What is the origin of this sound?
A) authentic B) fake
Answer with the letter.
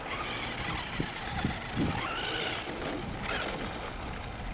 A